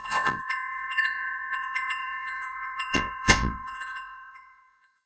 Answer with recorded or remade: remade